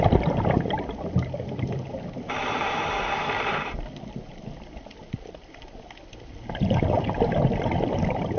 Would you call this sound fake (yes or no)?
yes